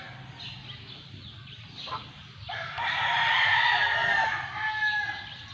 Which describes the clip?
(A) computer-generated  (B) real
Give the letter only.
B